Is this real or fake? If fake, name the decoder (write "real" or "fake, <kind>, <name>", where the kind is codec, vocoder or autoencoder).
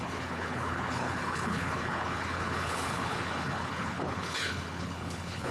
fake, codec, HILCodec